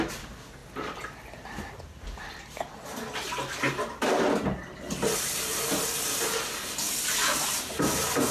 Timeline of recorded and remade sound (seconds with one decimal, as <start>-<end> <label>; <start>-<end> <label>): 0.0-8.3 recorded